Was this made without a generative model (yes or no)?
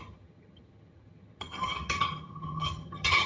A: no